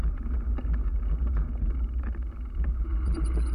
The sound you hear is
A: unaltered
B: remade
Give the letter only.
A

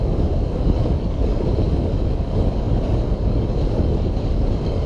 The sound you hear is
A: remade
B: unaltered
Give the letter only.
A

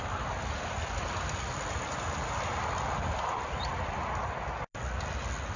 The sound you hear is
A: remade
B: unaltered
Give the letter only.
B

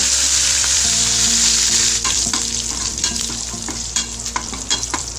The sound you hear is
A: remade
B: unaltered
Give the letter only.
A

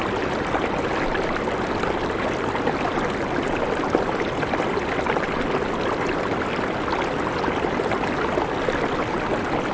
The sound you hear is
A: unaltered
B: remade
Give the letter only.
A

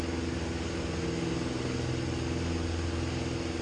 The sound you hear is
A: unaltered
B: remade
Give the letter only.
A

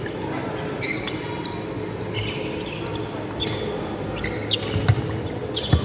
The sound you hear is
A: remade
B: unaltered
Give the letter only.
B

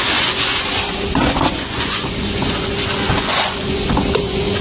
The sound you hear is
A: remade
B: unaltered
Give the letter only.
A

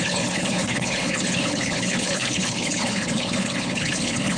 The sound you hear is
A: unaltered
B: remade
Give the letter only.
B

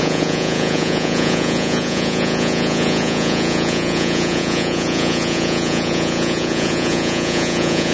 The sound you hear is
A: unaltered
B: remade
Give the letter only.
B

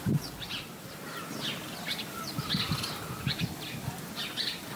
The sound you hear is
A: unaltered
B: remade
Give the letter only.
B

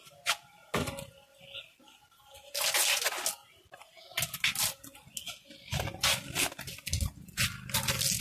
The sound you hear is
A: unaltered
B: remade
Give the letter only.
A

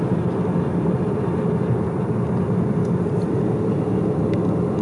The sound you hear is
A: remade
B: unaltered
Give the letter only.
B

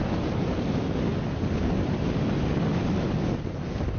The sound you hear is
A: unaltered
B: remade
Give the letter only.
A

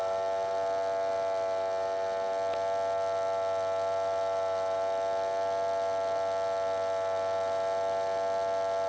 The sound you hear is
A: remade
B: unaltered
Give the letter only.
B